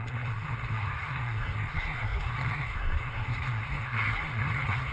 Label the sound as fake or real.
fake